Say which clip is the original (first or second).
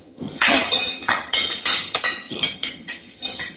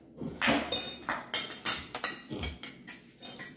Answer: second